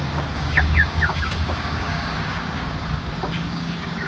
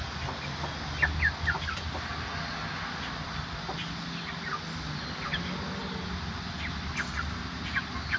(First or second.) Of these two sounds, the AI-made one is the first